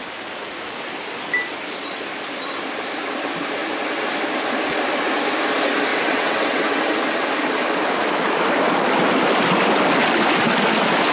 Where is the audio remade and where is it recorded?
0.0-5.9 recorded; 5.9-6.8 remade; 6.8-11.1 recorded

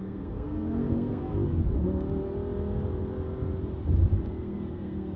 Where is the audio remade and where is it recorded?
0.0-1.2 remade; 1.2-4.3 recorded; 4.3-5.2 remade

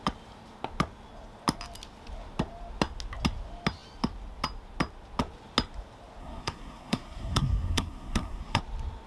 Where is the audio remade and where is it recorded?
0.0-6.2 recorded; 6.2-8.6 remade; 8.6-9.1 recorded

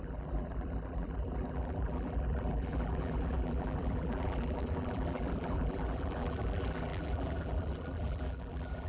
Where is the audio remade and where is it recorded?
0.0-8.9 remade